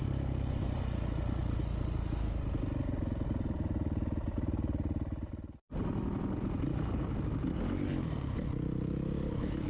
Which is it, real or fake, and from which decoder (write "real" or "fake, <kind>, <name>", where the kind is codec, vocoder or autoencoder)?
real